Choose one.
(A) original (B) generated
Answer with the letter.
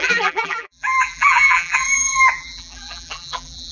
B